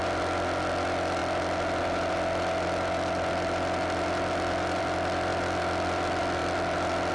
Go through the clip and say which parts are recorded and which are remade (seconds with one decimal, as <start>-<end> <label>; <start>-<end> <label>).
0.0-7.1 recorded